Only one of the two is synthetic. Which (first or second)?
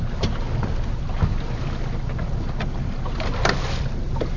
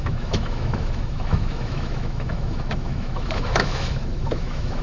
second